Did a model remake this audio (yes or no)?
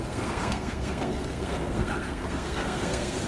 yes